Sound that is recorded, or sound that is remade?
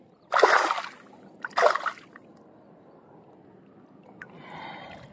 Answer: recorded